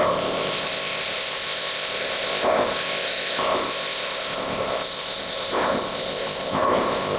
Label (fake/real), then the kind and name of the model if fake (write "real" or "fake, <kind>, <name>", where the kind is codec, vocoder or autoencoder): fake, codec, ZipCodec